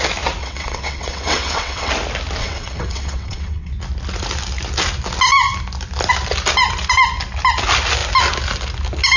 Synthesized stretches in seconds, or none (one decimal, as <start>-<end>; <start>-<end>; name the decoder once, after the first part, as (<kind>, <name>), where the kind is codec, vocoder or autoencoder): 0.4-1.9 (vocoder, WaveNeXt); 2.4-3.7